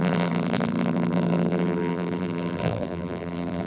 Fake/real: fake